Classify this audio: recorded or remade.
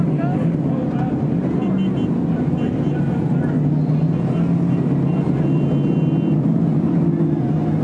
recorded